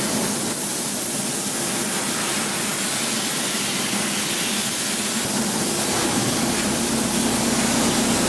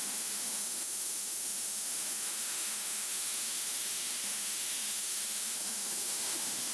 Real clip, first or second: first